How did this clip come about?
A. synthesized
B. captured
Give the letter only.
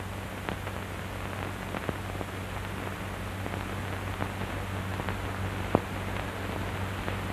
B